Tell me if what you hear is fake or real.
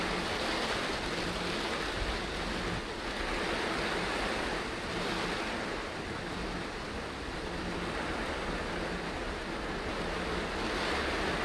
real